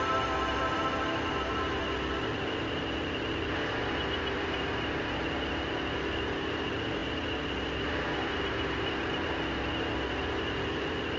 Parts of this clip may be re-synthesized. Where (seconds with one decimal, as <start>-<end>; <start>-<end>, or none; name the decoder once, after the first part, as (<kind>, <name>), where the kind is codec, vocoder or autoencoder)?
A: none